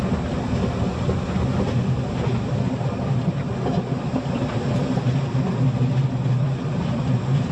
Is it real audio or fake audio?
real